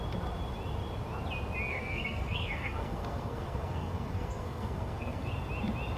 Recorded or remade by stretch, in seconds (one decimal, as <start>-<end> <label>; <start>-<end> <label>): 0.0-1.7 recorded; 1.7-5.3 remade; 5.3-6.0 recorded